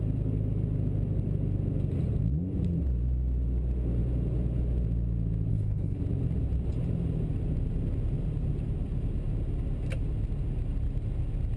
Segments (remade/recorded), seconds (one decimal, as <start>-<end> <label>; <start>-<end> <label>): 0.0-5.5 recorded; 5.5-6.0 remade; 6.0-11.6 recorded